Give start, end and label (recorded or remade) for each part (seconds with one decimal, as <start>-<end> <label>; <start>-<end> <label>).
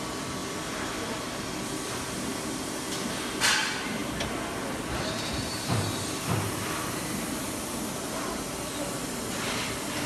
0.0-10.1 recorded